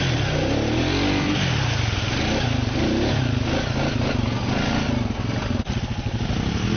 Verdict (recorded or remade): recorded